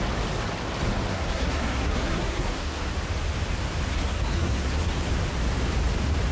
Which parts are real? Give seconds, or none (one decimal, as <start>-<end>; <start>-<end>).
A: 0.0-1.1; 2.9-3.9; 5.1-6.3